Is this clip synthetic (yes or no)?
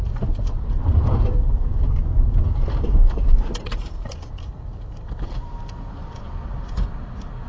yes